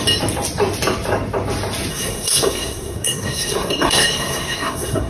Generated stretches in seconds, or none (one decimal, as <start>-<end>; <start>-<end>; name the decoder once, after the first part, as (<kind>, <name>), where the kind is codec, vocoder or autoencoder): 1.9-5.1 (codec, SNAC)